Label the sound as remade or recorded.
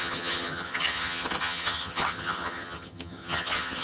remade